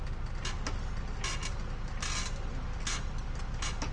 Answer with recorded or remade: recorded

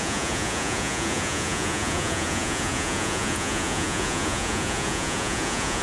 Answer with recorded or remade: remade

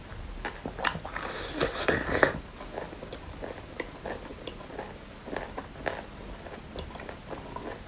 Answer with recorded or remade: recorded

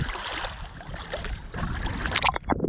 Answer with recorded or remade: recorded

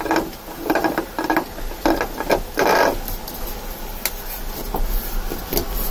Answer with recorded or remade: recorded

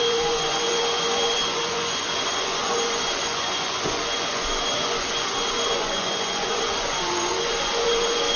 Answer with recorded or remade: remade